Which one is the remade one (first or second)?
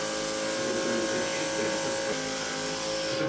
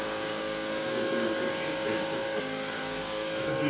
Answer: second